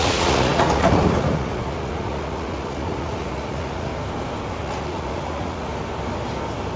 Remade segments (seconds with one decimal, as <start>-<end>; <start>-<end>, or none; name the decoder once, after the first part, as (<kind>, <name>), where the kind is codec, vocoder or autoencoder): 0.0-3.9 (vocoder, Vocos); 4.5-5.7